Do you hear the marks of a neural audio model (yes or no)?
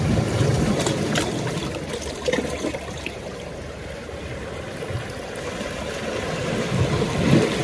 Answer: no